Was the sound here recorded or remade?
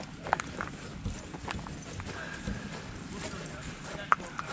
recorded